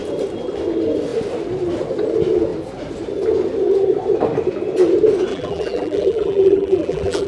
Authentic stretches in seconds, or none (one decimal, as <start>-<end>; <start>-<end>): 0.0-5.3

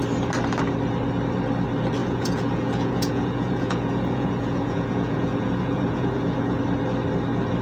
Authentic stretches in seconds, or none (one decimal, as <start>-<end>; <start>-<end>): 0.0-2.0; 6.6-7.6

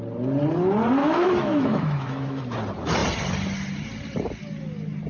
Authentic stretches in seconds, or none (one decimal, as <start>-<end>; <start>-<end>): 0.0-1.0; 2.4-5.1

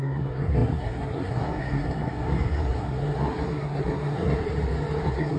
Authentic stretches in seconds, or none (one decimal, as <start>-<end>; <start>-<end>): 4.4-5.0

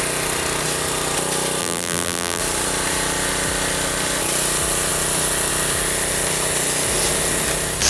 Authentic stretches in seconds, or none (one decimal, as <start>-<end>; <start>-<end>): 0.0-1.6; 2.4-7.9

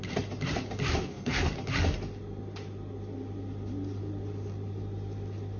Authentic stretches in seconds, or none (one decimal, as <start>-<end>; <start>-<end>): 0.0-1.0; 1.5-5.6

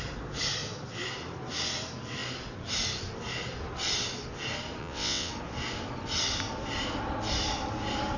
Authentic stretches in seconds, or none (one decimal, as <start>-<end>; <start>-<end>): 0.0-4.8; 5.3-8.2